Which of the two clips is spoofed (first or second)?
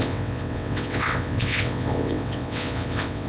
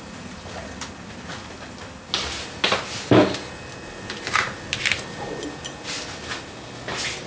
first